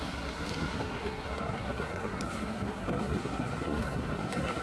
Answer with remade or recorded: remade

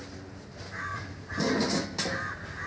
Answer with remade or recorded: recorded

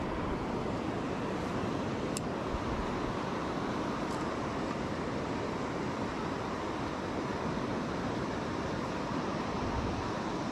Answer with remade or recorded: remade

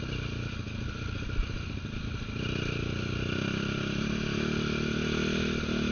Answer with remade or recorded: recorded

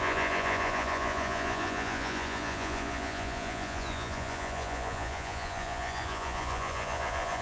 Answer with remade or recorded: remade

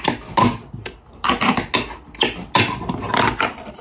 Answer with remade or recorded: recorded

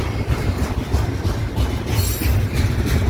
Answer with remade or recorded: recorded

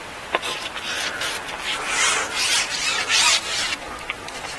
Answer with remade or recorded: recorded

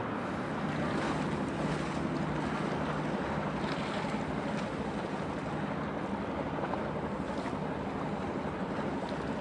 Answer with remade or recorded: recorded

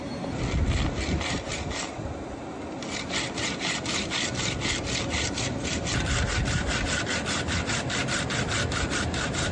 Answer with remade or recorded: recorded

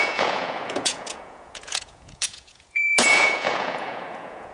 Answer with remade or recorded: remade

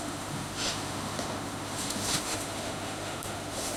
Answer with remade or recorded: remade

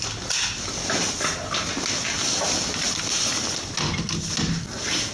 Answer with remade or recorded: recorded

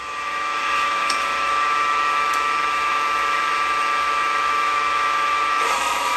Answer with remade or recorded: remade